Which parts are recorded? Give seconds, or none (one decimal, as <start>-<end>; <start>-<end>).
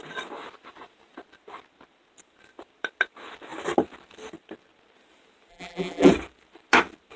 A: 0.0-5.5; 6.1-7.2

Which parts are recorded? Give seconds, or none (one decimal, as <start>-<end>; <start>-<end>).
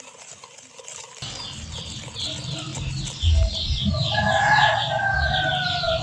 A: 0.0-6.0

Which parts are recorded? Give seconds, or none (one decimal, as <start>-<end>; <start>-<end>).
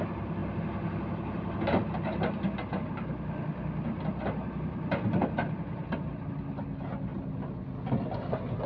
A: 0.0-8.7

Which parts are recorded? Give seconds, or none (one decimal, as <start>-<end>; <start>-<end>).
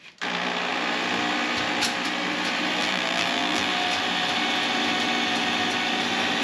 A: 0.0-2.8; 3.7-6.4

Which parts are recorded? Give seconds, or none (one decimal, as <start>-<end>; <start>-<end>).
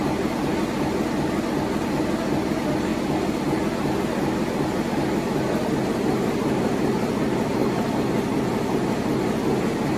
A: 0.0-10.0